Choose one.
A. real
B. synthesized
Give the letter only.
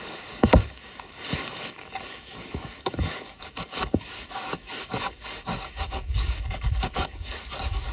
B